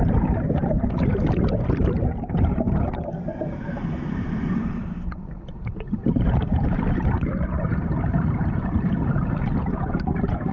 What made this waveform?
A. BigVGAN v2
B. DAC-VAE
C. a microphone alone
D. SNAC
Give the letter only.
A